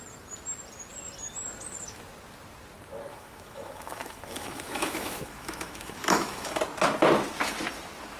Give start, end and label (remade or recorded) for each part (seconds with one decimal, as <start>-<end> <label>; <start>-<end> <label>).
0.0-3.1 recorded; 3.1-6.6 remade; 6.6-8.2 recorded